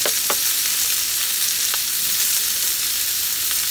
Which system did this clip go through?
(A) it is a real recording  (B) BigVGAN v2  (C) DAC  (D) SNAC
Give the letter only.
A